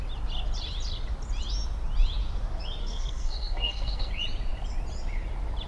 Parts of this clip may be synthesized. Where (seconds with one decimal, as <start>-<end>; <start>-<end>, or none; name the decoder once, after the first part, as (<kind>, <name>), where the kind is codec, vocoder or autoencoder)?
2.8-4.1 (codec, SNAC)